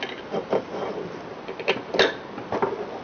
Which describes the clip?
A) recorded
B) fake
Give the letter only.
A